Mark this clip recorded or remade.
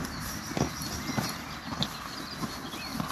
recorded